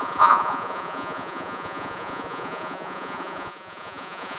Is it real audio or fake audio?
fake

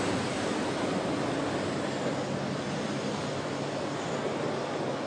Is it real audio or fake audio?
real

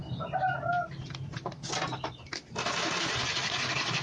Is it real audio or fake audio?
real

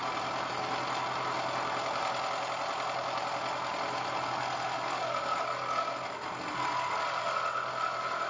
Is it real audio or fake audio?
real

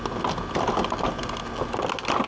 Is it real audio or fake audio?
real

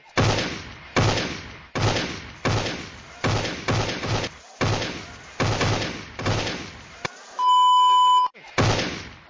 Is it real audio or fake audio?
real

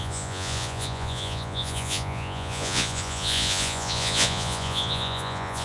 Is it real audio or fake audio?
fake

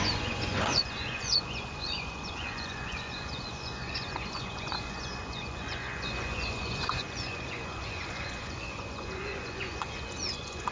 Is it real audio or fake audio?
fake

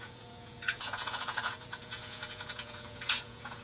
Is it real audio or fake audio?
fake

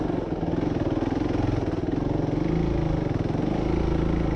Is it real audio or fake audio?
real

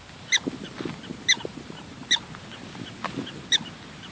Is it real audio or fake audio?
real